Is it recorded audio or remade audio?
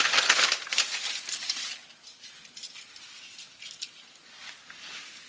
recorded